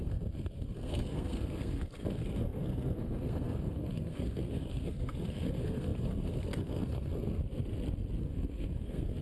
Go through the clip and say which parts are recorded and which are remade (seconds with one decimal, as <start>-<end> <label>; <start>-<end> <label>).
0.0-7.4 remade; 7.4-8.2 recorded; 8.2-9.2 remade